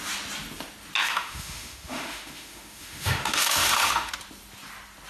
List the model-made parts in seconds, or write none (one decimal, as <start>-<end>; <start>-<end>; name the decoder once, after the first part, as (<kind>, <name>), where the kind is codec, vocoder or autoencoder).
1.0-4.1 (autoencoder, DAC-VAE)